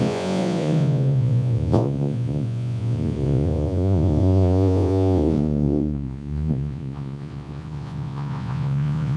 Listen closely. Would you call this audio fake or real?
fake